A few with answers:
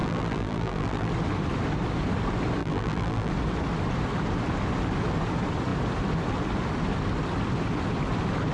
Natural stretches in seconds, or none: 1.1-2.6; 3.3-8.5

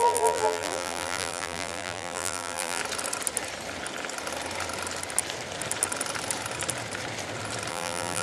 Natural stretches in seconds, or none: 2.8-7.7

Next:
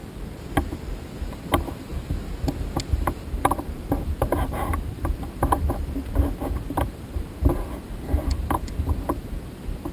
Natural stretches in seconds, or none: 0.0-1.2; 1.9-3.0

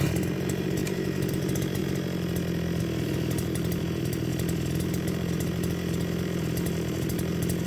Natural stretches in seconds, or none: 1.8-2.8; 4.3-4.8